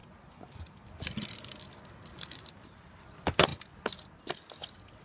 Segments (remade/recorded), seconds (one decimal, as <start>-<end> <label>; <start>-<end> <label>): 0.0-5.0 recorded